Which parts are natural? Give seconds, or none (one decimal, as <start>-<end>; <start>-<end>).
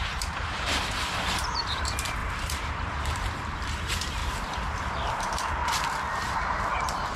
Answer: 0.8-1.4; 4.2-5.1; 5.6-6.8